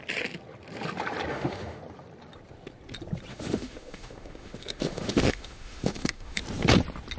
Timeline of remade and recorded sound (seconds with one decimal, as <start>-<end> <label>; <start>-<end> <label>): 0.0-1.3 recorded; 1.3-1.8 remade; 1.8-3.3 recorded; 3.3-6.4 remade; 6.4-7.2 recorded